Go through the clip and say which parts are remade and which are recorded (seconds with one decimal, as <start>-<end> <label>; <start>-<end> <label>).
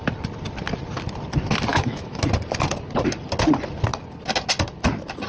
0.0-1.7 recorded; 1.7-2.2 remade; 2.2-5.3 recorded